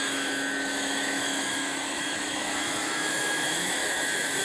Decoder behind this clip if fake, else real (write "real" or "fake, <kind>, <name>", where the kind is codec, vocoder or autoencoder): fake, autoencoder, DAC-VAE